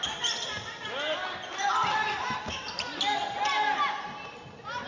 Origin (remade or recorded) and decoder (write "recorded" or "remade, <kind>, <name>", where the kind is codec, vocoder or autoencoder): recorded